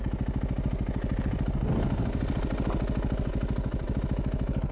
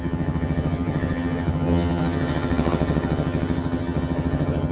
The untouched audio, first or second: first